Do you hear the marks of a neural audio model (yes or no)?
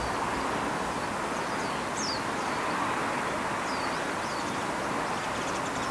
no